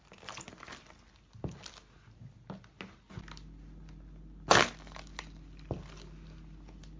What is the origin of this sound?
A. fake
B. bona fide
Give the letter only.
B